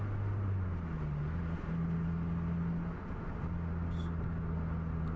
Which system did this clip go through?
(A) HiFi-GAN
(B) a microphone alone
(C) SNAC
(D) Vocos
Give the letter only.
B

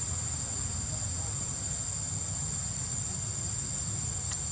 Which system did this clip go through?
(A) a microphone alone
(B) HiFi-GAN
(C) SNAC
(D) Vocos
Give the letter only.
A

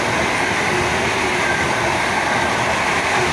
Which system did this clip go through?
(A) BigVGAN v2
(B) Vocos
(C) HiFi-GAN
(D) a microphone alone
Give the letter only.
D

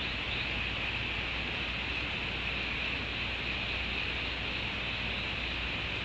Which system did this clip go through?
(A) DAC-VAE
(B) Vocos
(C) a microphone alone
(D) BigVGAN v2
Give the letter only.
C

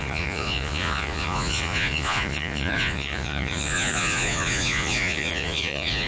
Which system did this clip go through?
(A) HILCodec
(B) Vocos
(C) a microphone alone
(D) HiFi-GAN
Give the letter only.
B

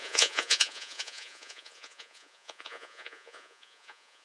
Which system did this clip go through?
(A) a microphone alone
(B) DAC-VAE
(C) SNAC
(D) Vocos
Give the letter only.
D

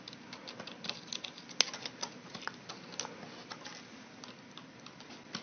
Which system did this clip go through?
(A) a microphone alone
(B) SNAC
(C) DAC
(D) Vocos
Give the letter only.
A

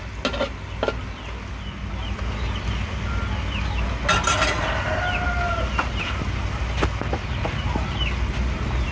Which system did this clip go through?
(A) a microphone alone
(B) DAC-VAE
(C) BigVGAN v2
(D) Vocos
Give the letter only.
A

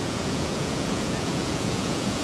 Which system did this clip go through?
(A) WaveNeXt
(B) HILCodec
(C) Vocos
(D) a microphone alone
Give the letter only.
C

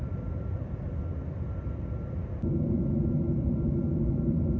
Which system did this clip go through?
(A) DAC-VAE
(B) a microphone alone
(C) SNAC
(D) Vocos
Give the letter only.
B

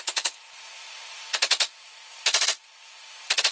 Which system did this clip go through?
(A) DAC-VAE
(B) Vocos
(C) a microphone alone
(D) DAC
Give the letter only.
B